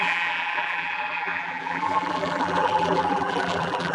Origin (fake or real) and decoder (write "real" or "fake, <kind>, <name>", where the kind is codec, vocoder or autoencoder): fake, vocoder, BigVGAN v2